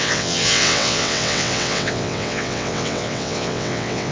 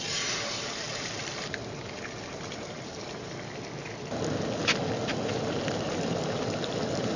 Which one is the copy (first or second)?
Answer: first